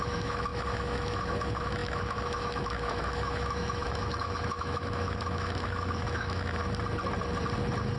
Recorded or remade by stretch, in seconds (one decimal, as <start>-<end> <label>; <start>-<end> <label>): 0.0-6.6 remade; 6.6-8.0 recorded